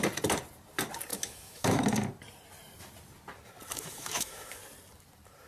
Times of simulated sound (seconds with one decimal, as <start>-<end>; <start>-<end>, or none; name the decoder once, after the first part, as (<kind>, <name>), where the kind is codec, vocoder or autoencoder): 1.1-1.8 (autoencoder, DAC-VAE); 3.7-4.6